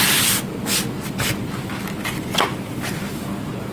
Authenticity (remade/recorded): recorded